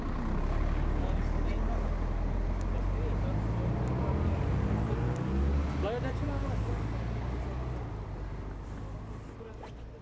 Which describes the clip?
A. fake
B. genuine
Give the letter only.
B